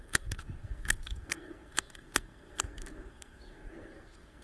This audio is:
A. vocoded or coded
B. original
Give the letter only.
A